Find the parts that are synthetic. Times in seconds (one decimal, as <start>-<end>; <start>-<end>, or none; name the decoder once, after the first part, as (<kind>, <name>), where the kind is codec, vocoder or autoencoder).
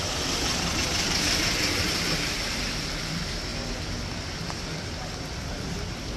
none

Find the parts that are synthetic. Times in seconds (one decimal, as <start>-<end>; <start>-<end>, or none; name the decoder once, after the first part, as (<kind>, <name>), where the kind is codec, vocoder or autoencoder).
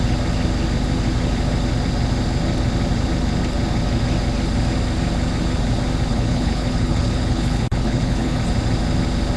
6.1-8.4 (codec, HILCodec)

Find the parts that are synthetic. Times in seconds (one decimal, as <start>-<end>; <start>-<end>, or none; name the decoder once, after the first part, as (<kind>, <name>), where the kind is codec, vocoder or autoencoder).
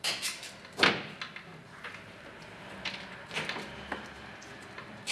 none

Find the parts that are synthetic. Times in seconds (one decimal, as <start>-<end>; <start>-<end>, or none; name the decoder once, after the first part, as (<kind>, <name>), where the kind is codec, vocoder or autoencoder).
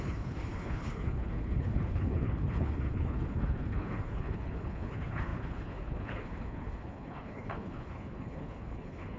0.0-9.2 (codec, HILCodec)